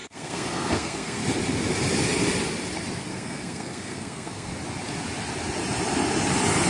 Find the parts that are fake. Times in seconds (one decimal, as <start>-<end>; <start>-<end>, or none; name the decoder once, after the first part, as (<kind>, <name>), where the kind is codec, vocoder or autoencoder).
0.0-1.2 (codec, SNAC); 3.1-4.5

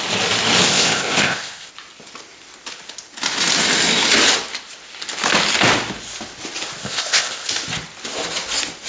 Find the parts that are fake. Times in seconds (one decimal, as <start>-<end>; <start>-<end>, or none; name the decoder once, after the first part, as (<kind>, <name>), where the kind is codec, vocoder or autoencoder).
0.7-1.7 (codec, ZipCodec); 6.8-7.5

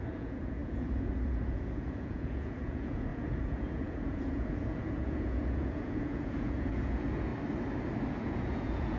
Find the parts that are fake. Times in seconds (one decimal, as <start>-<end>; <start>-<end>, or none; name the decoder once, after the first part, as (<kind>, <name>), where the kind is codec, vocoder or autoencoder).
0.0-7.3 (vocoder, Vocos); 8.1-9.0

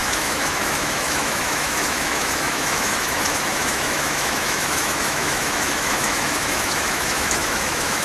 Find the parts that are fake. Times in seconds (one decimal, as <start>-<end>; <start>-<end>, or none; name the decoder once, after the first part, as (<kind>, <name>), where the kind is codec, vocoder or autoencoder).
0.0-8.0 (autoencoder, DAC-VAE)